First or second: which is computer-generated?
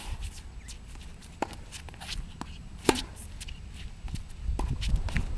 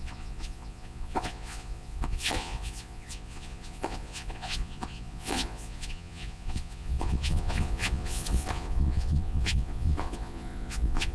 second